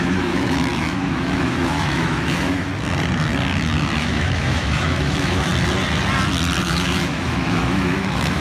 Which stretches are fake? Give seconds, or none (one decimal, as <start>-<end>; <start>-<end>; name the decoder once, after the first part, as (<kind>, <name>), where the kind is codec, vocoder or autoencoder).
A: 0.0-2.7 (autoencoder, DAC-VAE); 4.0-5.5; 6.6-8.4